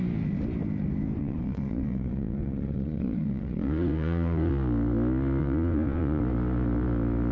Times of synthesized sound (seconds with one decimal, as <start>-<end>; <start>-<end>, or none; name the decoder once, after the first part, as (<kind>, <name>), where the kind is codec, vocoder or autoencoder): 1.2-4.5 (vocoder, Vocos); 5.4-6.2